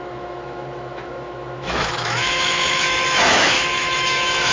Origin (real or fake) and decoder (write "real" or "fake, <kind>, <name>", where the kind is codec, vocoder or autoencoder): fake, autoencoder, DAC-VAE